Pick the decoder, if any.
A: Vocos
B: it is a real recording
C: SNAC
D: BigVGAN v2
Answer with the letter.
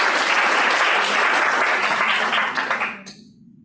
B